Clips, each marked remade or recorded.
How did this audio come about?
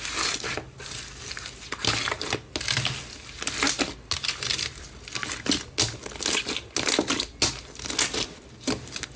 recorded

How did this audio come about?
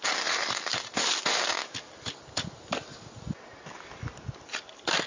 recorded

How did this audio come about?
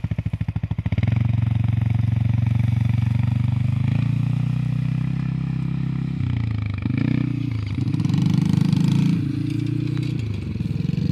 recorded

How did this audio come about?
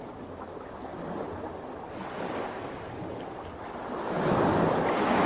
recorded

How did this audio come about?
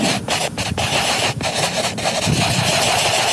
recorded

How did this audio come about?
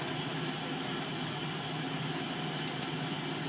recorded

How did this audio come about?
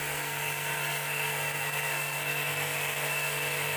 remade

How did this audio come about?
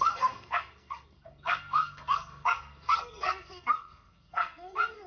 remade